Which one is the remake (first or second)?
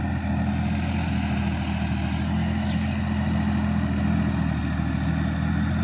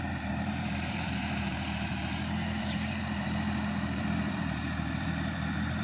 second